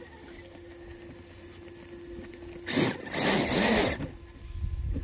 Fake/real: real